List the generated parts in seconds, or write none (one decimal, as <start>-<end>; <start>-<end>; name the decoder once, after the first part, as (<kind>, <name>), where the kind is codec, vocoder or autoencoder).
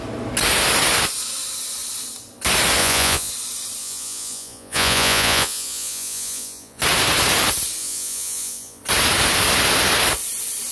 2.8-3.3 (vocoder, Vocos); 3.8-6.8; 7.8-8.8